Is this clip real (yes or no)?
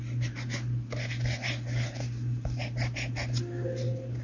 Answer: yes